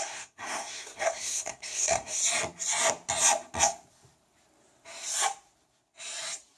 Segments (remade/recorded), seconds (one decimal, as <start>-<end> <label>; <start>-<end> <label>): 0.0-2.2 remade; 2.2-6.6 recorded

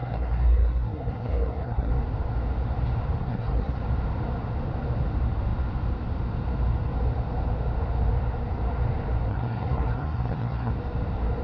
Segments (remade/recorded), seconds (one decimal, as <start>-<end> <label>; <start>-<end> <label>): 0.0-1.9 remade; 1.9-3.2 recorded; 3.2-3.8 remade; 3.8-9.3 recorded; 9.3-10.7 remade; 10.7-11.4 recorded

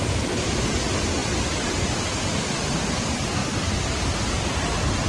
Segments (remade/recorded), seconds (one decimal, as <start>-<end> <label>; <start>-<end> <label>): 0.0-5.1 recorded

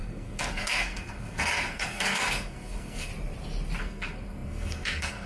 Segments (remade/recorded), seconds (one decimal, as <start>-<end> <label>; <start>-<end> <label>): 0.0-3.1 remade; 3.1-3.8 recorded; 3.8-5.3 remade

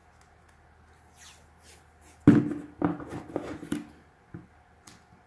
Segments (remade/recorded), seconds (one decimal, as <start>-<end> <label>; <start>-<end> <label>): 0.0-5.3 recorded

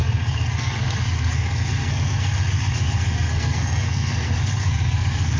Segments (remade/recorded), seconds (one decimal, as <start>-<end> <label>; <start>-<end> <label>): 0.0-5.4 remade

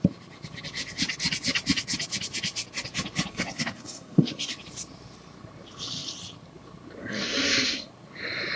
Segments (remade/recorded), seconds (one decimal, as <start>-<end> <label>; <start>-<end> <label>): 0.0-3.3 recorded; 3.3-4.5 remade; 4.5-7.0 recorded; 7.0-7.9 remade; 7.9-8.6 recorded